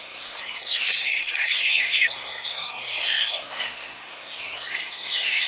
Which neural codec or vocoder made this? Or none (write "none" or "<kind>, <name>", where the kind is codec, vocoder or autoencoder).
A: codec, SNAC